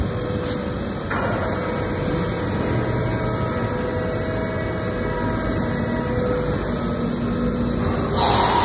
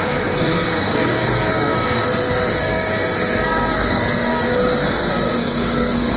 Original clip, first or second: first